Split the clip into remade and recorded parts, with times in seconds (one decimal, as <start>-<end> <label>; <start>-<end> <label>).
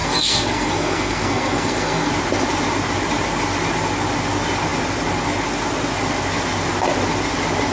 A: 0.0-2.1 remade; 2.1-7.7 recorded